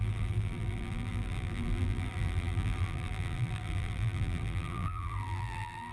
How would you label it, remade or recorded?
remade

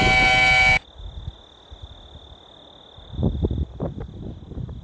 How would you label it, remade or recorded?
recorded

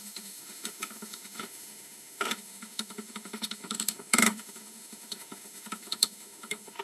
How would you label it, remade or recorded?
remade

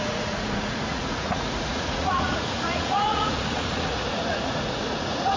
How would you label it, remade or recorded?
remade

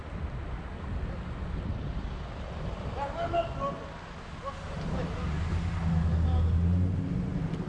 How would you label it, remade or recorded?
recorded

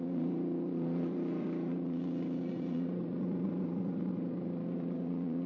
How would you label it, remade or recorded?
remade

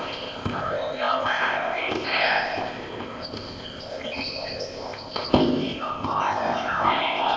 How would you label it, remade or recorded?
remade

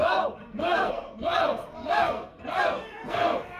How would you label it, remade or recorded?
remade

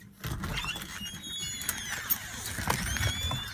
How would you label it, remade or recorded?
recorded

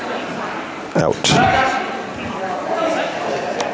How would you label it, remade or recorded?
recorded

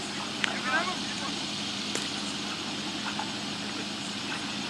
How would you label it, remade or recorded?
recorded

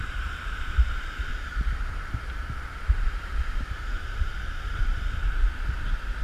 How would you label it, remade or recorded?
remade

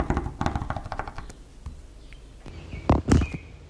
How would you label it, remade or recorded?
recorded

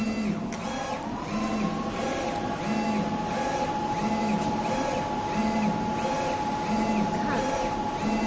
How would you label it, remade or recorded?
recorded